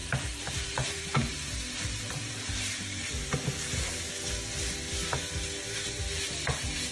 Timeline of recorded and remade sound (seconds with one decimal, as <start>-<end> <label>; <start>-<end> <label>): 0.0-4.1 remade; 4.1-6.9 recorded